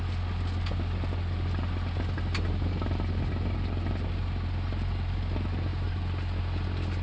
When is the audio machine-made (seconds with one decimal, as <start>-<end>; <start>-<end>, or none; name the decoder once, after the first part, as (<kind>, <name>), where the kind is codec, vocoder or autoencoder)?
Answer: none